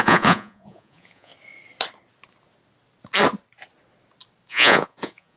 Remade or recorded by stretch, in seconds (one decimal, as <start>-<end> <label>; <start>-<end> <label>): 0.0-1.3 remade; 1.3-4.5 recorded; 4.5-5.4 remade